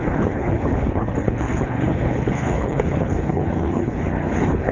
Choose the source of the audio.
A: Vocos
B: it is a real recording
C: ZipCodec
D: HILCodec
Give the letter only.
D